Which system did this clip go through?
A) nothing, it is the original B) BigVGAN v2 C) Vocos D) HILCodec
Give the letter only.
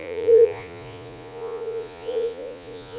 C